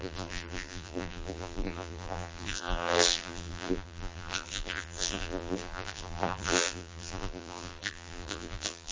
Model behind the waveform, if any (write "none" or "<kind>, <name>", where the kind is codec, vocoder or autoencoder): vocoder, BigVGAN v2